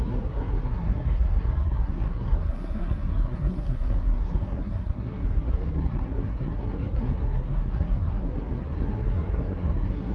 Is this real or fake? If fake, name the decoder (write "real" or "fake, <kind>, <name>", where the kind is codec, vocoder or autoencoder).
fake, codec, SNAC